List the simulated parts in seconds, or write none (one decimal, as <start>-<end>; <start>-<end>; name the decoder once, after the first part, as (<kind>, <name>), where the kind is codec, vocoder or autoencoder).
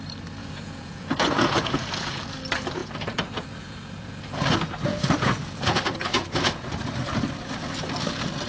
0.4-2.2 (vocoder, Vocos); 2.8-4.4; 4.9-6.4